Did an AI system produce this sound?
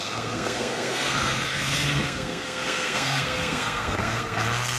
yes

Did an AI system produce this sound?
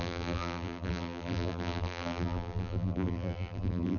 yes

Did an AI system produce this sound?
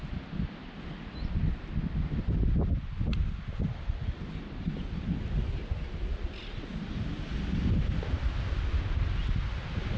no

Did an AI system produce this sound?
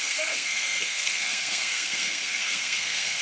yes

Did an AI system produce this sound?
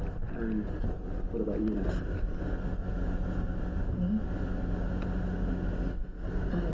no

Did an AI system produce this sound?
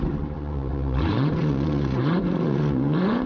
yes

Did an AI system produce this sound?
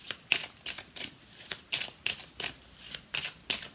no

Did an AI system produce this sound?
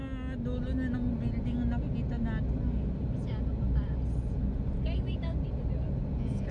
no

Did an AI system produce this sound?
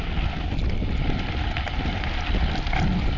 no